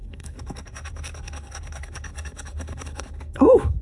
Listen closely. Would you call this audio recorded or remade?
remade